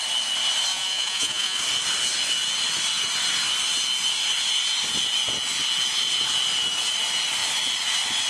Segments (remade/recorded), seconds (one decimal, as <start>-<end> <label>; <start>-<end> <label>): 0.0-0.7 recorded; 0.7-1.6 remade; 1.6-8.3 recorded